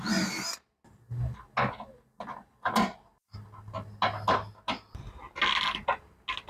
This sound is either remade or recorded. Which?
recorded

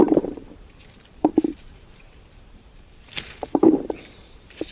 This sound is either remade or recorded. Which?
remade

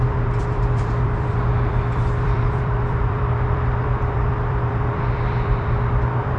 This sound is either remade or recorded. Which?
remade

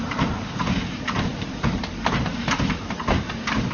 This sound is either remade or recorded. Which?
remade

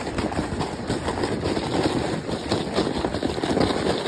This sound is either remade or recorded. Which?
recorded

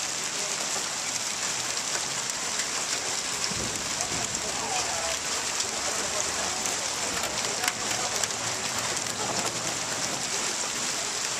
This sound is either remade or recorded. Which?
remade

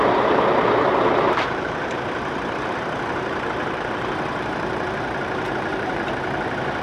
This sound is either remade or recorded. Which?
remade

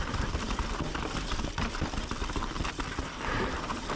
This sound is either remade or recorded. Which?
remade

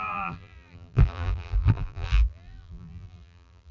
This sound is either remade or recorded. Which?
remade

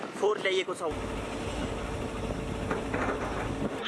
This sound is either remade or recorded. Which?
recorded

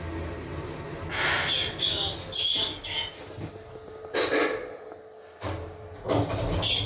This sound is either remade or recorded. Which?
recorded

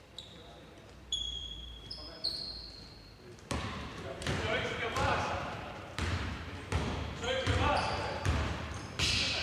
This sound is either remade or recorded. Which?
remade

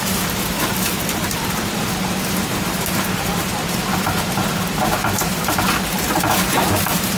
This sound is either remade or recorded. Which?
remade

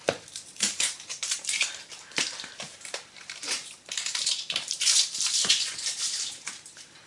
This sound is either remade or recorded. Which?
remade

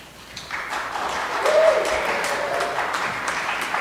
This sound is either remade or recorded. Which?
remade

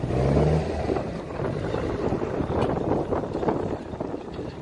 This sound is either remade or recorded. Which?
remade